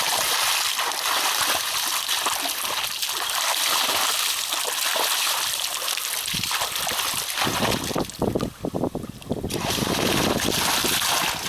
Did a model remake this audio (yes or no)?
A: no